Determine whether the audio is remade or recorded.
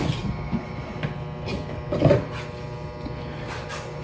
recorded